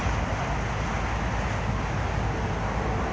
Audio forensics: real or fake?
real